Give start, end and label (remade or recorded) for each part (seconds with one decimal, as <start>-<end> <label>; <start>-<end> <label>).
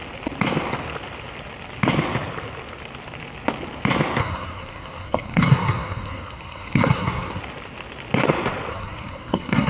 0.0-4.2 recorded; 4.2-7.4 remade; 7.4-8.7 recorded; 8.7-9.7 remade